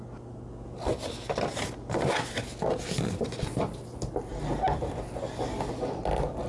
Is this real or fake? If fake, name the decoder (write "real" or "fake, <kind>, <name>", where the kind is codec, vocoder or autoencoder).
real